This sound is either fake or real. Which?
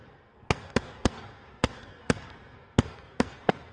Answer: fake